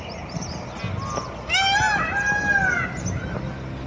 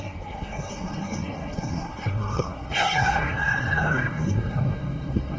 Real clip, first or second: first